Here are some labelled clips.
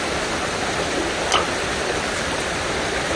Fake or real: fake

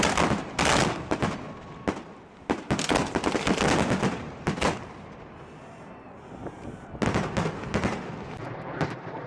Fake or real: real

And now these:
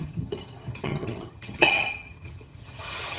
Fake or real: fake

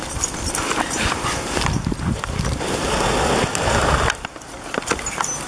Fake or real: real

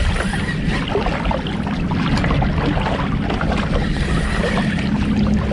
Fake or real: real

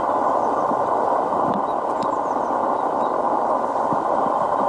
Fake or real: real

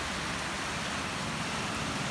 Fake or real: real